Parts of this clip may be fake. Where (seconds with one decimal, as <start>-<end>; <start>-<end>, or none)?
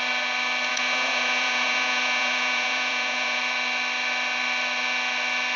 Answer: 0.7-3.4